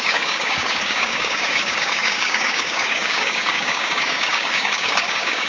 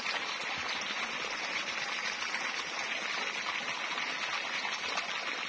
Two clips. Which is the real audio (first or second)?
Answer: second